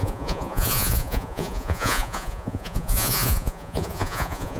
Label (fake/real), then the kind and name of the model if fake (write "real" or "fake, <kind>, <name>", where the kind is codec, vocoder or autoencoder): fake, vocoder, Vocos